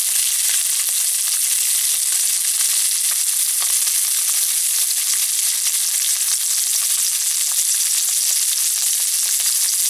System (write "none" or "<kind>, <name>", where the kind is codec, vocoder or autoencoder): none